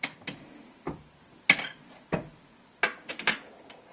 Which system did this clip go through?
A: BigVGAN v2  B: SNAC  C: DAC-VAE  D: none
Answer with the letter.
D